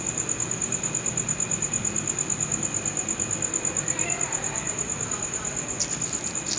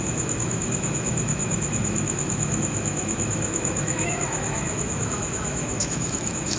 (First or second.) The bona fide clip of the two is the first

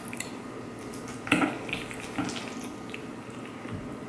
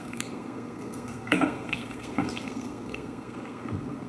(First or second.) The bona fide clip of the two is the first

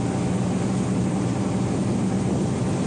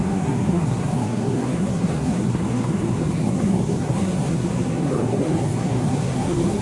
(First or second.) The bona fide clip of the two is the first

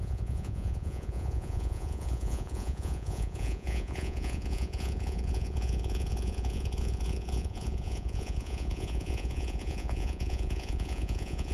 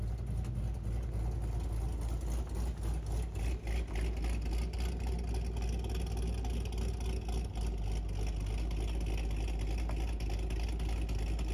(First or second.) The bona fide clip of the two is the second